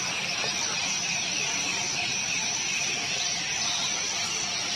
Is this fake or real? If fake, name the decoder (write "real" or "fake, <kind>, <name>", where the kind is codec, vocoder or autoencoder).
real